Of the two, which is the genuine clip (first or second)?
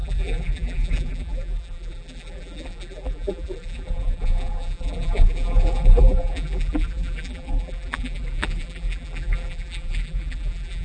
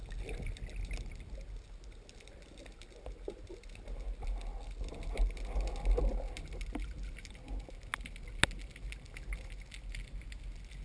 second